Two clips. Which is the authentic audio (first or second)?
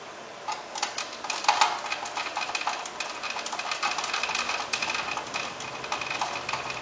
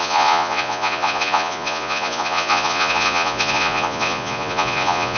first